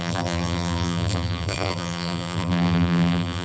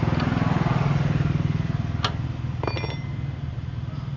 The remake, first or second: first